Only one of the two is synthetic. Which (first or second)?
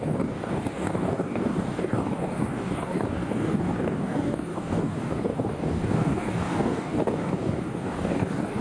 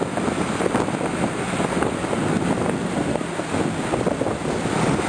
first